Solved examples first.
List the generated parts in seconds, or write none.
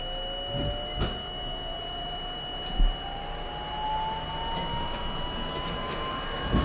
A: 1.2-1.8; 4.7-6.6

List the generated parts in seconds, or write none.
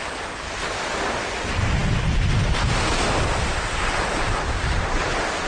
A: 0.0-0.5